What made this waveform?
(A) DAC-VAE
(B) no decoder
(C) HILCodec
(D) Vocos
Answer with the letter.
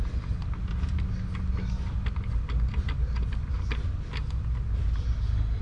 B